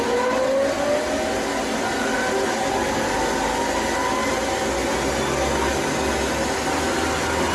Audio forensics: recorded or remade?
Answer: recorded